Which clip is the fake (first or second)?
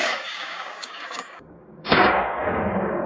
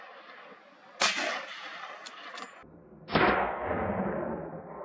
first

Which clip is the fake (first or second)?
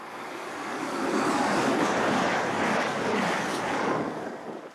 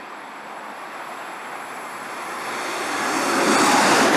first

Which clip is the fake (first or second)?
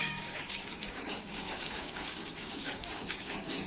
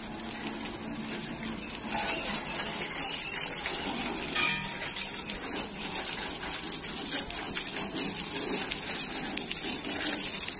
first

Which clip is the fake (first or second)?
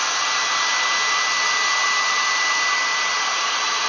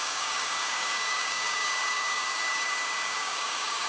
second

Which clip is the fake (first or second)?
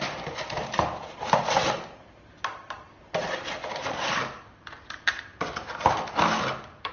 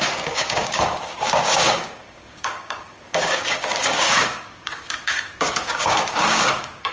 second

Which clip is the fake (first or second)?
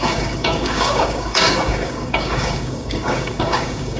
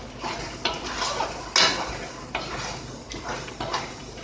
first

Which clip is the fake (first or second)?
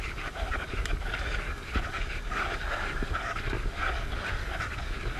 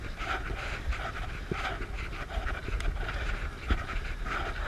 first